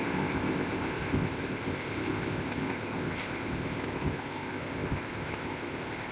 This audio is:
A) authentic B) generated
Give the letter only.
B